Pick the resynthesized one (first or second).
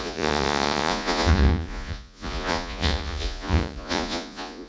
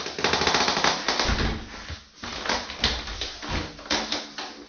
first